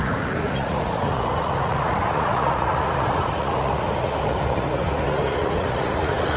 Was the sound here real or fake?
fake